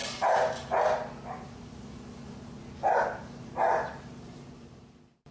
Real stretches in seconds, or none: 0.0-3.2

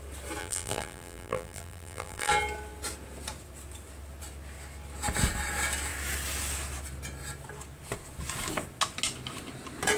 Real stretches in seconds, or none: 0.0-0.4; 2.3-10.0

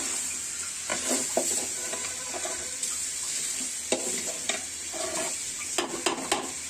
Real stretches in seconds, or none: 0.0-0.9; 3.6-6.7

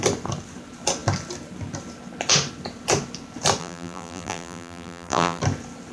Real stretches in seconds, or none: 0.0-3.6; 5.4-5.9

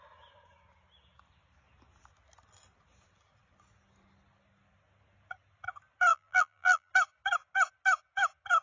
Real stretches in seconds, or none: 0.0-6.1; 6.9-8.6

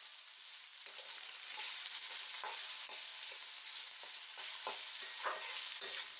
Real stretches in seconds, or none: 0.0-0.7; 1.9-3.1; 5.2-6.2

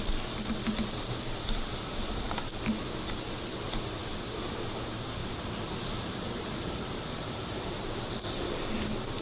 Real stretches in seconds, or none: 0.0-5.2; 8.7-9.2

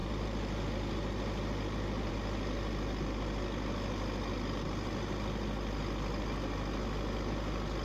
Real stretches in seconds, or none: 0.0-7.8